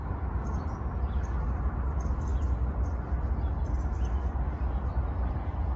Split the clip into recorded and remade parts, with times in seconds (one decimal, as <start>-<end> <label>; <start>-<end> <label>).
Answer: 0.0-0.8 remade; 0.8-5.8 recorded